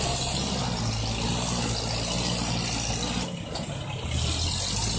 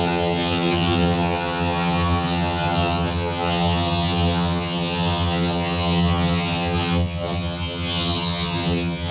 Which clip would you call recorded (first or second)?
first